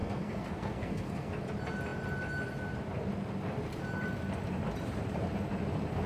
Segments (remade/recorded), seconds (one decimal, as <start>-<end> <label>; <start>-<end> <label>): 0.0-1.3 remade; 1.3-6.1 recorded